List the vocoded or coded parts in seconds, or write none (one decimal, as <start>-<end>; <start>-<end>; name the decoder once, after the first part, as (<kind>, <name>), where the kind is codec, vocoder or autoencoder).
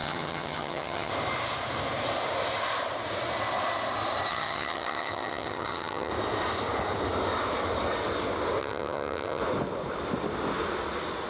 0.0-1.1 (vocoder, HiFi-GAN); 4.3-6.1; 8.6-9.4